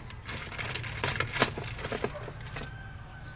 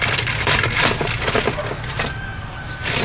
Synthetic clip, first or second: second